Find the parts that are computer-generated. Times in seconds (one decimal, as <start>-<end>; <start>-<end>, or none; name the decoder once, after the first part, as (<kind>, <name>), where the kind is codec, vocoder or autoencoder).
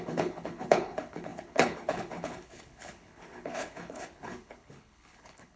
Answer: 0.0-5.6 (codec, HILCodec)